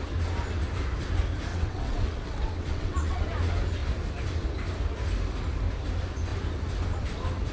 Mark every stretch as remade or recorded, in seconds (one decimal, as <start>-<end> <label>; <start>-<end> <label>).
0.0-1.5 recorded; 1.5-3.2 remade; 3.2-7.5 recorded